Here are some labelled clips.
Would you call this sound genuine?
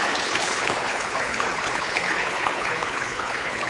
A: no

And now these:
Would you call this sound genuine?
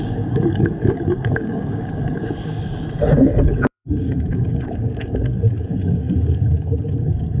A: no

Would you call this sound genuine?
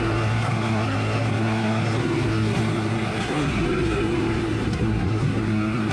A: no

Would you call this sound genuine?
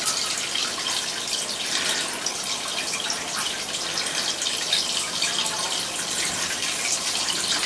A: yes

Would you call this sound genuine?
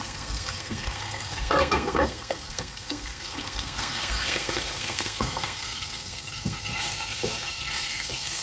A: no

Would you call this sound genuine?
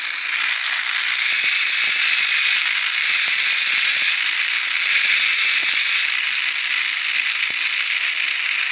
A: yes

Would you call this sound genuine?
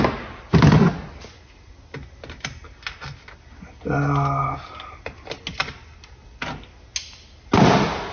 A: yes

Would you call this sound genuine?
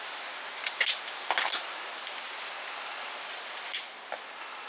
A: yes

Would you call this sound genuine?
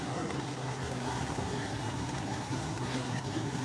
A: no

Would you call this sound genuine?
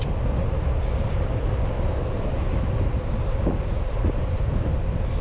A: yes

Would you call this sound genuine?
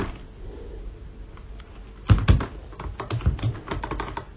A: yes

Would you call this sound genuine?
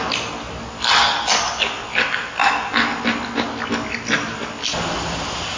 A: yes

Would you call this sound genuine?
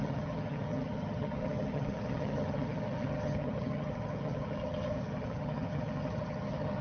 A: no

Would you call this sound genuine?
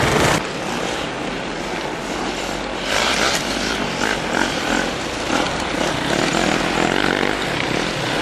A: yes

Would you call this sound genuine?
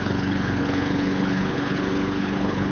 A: no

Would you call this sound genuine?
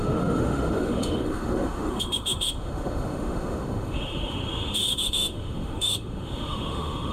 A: no